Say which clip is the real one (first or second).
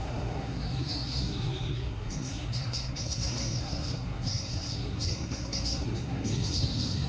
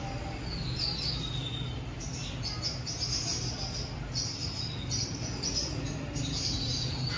second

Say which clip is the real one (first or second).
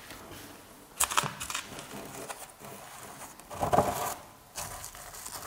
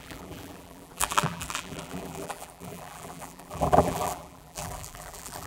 first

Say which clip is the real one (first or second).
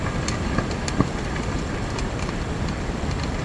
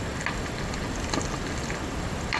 second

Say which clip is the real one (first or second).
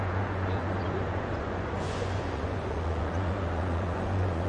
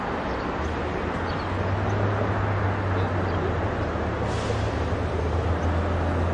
second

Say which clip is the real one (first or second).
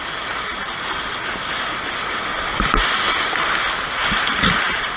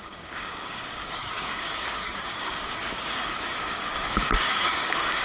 first